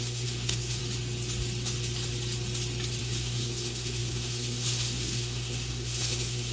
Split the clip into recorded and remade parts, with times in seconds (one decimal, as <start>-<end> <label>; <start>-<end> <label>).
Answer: 0.0-0.8 remade; 0.8-3.0 recorded; 3.0-6.5 remade